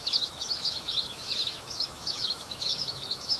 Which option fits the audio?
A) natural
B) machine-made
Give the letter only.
B